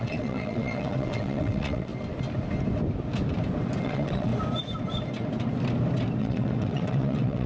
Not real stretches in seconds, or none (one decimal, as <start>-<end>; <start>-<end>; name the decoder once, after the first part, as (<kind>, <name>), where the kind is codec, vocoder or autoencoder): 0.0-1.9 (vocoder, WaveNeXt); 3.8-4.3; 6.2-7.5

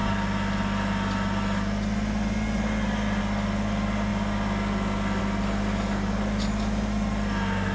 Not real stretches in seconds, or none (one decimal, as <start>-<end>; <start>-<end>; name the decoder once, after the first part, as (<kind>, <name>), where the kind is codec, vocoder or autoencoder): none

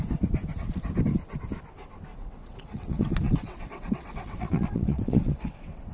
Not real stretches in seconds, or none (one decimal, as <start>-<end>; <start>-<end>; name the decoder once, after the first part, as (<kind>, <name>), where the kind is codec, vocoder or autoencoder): 2.1-5.9 (vocoder, WaveNeXt)